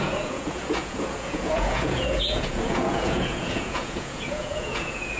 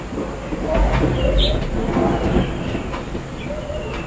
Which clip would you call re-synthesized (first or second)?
first